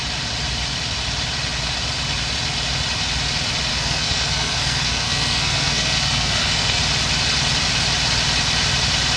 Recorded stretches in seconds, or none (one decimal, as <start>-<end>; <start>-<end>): 0.0-3.7; 6.8-9.2